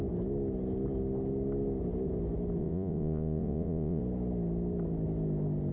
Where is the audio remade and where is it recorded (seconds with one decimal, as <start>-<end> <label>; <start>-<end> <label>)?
0.0-2.6 recorded; 2.6-4.0 remade; 4.0-5.7 recorded